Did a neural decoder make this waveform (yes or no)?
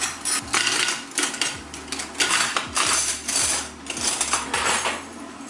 no